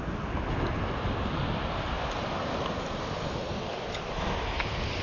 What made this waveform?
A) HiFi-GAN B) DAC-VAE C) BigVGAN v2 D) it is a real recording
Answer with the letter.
D